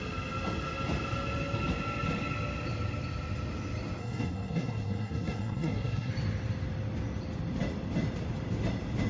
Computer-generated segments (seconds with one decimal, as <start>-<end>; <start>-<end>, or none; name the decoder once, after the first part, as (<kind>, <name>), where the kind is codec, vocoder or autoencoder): 4.0-6.1 (codec, SNAC)